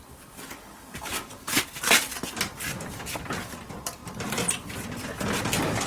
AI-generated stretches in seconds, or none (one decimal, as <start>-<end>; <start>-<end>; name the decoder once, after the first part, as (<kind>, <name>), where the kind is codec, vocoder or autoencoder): 0.0-5.9 (vocoder, BigVGAN v2)